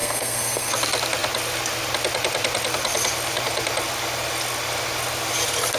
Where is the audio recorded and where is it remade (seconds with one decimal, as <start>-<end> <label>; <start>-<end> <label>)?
0.0-0.7 remade; 0.7-5.8 recorded